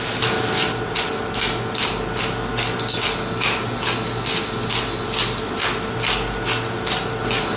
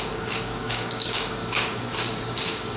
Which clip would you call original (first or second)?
first